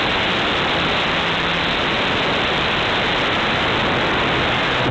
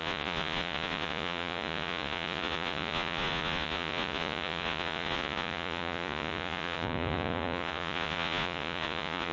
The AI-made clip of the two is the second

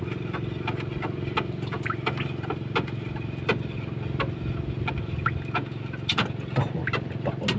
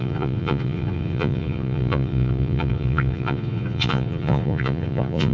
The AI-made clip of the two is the second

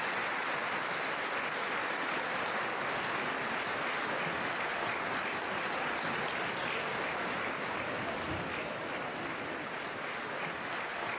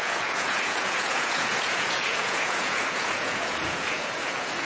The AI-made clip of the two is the second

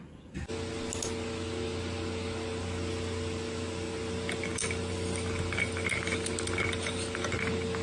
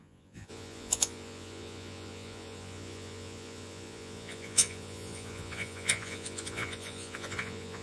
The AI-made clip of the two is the second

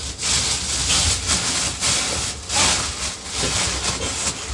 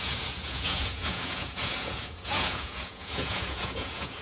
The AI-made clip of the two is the second